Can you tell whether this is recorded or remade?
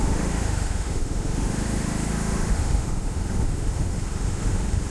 remade